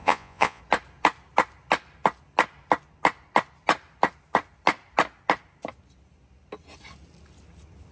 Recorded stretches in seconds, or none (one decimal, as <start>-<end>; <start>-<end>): 0.6-7.9